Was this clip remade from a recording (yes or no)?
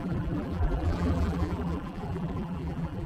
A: yes